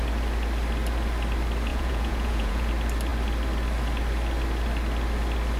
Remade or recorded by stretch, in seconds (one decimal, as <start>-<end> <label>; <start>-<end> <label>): 0.0-1.7 recorded; 1.7-2.7 remade; 2.7-5.6 recorded

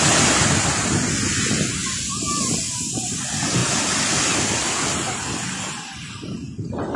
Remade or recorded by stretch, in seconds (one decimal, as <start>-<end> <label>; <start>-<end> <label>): 0.0-7.0 recorded

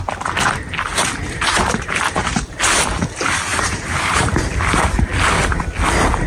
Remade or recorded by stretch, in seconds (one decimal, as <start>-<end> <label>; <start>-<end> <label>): 0.0-0.9 recorded; 0.9-2.6 remade; 2.6-3.5 recorded; 3.5-4.6 remade; 4.6-6.3 recorded

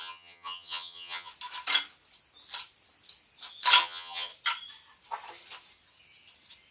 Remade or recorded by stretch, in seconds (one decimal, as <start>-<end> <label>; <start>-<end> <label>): 0.0-1.3 remade; 1.3-3.8 recorded; 3.8-4.3 remade; 4.3-6.7 recorded

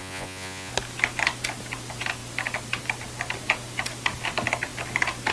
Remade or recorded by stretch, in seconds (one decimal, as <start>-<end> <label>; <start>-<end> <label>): 0.0-0.7 remade; 0.7-5.3 recorded

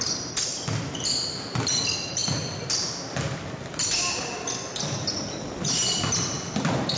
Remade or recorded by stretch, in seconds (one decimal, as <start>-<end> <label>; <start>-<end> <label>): 0.0-7.0 recorded

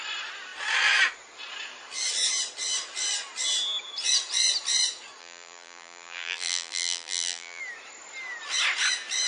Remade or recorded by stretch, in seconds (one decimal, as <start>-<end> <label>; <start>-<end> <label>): 0.0-5.2 recorded; 5.2-7.6 remade; 7.6-9.3 recorded

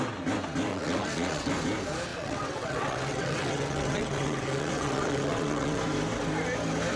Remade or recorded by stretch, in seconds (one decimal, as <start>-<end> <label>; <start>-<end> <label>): 0.0-0.7 recorded; 0.7-1.5 remade; 1.5-2.1 recorded; 2.1-5.8 remade; 5.8-7.0 recorded